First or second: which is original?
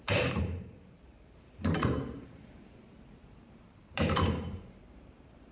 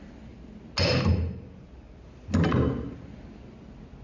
second